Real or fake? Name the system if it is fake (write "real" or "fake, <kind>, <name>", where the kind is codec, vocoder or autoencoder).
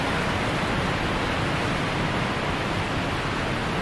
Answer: real